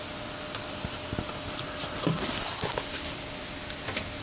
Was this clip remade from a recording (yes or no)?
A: no